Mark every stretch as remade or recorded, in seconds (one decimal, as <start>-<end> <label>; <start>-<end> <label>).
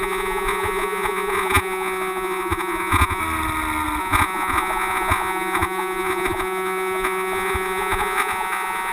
0.0-3.2 remade; 3.2-4.0 recorded; 4.0-8.9 remade